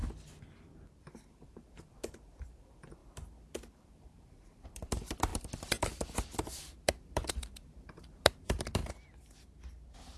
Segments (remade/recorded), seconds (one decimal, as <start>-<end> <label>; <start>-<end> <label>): 0.0-1.0 recorded; 1.0-3.0 remade; 3.0-3.7 recorded; 3.7-8.8 remade; 8.8-10.2 recorded